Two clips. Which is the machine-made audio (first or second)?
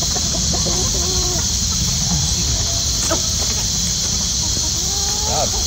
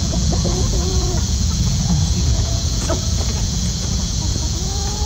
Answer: second